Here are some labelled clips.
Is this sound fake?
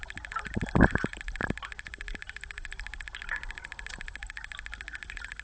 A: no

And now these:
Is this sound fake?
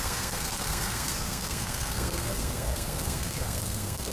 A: yes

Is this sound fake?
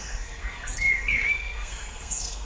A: yes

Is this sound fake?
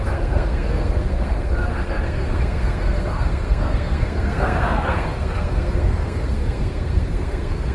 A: yes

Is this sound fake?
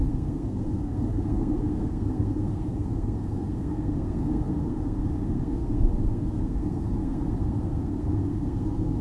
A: yes